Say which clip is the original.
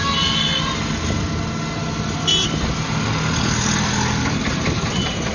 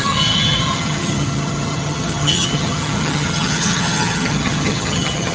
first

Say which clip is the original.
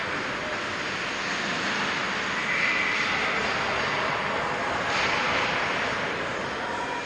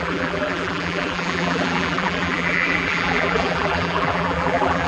first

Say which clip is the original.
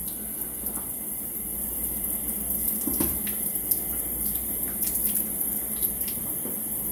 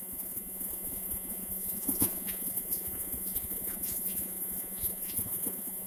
first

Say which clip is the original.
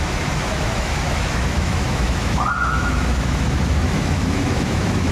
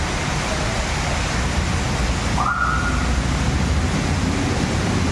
second